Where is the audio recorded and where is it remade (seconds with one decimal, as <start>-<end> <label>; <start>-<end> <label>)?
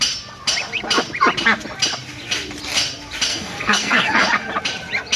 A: 0.0-3.3 recorded; 3.3-4.2 remade; 4.2-5.2 recorded